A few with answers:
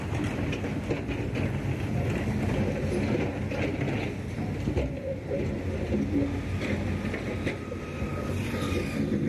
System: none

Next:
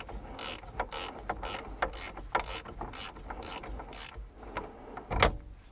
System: none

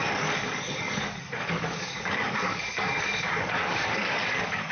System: codec, DAC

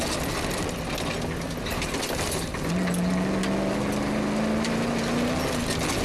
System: none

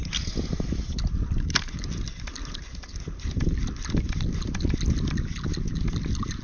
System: none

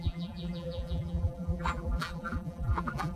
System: vocoder, BigVGAN v2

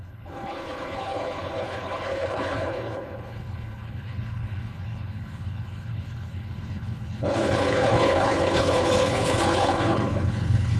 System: codec, HILCodec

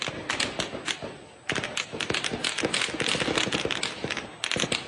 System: none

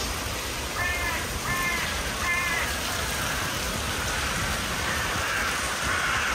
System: none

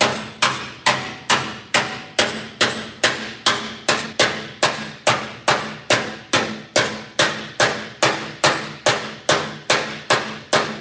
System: none